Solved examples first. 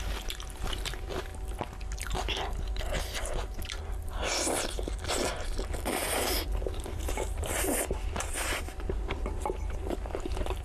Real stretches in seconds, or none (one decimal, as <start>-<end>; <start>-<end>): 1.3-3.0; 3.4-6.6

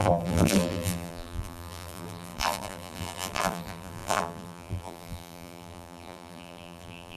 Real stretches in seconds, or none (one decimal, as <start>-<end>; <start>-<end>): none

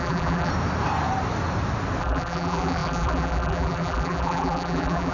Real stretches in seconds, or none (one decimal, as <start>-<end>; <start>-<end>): 0.5-2.0

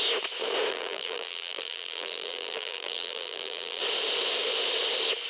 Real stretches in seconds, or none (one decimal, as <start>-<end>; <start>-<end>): 0.0-0.7; 3.8-5.3